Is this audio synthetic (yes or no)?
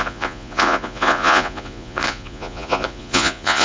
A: yes